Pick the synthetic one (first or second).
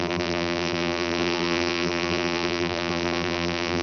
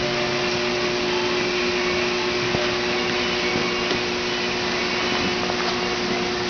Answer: first